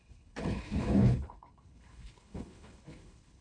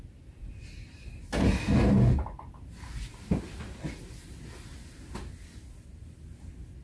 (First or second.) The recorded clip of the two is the second